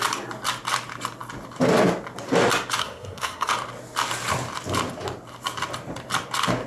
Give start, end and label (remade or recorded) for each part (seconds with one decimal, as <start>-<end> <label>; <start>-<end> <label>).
0.0-2.8 recorded; 2.8-3.5 remade; 3.5-6.7 recorded